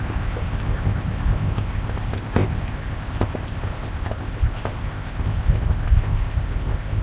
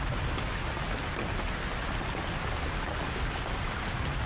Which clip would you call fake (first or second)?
first